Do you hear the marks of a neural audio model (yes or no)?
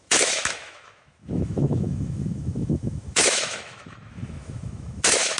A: yes